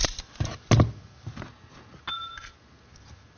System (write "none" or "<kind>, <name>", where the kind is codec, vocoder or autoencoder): none